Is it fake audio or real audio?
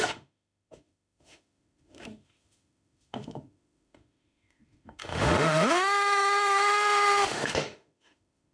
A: fake